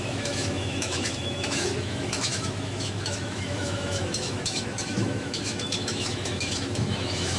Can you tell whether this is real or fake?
fake